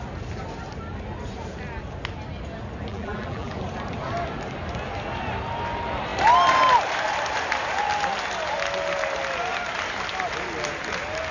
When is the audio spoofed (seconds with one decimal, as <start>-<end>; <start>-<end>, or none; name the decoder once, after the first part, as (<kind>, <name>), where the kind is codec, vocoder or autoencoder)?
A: 2.9-3.5 (vocoder, BigVGAN v2)